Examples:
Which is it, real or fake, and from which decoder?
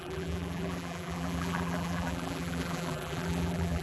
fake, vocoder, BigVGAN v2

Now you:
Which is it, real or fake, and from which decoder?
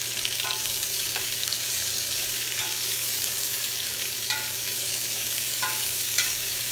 fake, codec, DAC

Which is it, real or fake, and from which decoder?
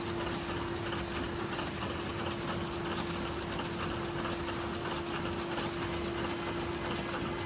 real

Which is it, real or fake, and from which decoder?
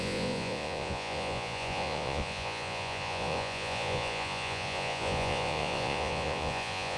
fake, vocoder, Vocos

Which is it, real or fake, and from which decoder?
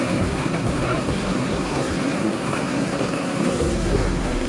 fake, codec, SNAC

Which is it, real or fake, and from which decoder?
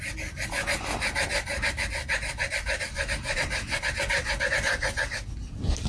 real